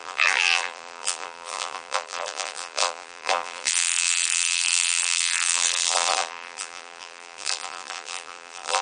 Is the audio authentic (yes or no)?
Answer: no